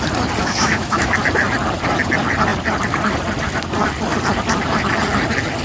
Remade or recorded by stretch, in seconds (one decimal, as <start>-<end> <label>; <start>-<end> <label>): 0.0-0.4 recorded; 0.4-1.1 remade; 1.1-5.6 recorded